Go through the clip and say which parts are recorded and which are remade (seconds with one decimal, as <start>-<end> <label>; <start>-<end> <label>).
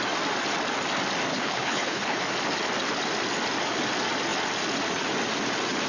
0.0-1.3 recorded; 1.3-2.2 remade; 2.2-5.9 recorded